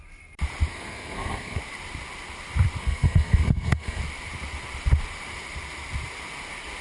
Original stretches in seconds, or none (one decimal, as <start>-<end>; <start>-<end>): 0.0-0.7; 1.6-2.8; 4.0-6.8